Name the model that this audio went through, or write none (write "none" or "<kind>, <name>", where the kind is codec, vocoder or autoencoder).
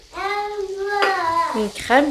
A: none